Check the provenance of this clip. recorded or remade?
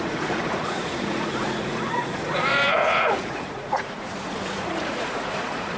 remade